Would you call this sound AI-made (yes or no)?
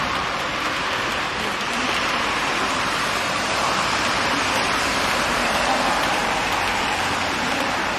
yes